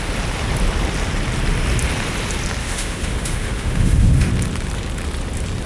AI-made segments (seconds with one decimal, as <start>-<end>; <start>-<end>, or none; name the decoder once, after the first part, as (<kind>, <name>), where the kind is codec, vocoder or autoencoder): 2.6-4.3 (autoencoder, DAC-VAE)